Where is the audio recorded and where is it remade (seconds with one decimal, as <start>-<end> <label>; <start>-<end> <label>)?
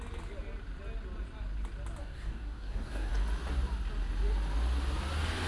0.0-2.0 recorded; 2.0-3.1 remade; 3.1-5.5 recorded